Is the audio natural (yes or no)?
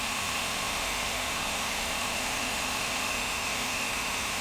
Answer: no